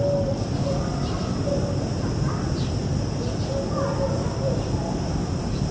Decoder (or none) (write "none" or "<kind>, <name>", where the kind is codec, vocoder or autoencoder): none